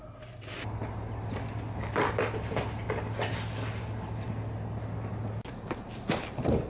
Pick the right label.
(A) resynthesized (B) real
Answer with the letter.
B